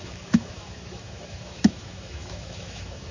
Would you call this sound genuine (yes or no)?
no